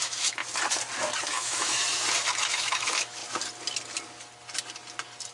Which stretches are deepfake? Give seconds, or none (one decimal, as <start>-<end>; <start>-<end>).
0.0-0.4; 1.2-1.8; 2.4-3.2

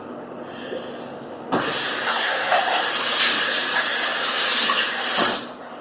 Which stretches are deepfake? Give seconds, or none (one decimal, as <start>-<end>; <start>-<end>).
2.1-2.6

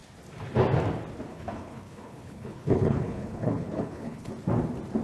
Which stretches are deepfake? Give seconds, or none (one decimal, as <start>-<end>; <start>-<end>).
1.3-4.3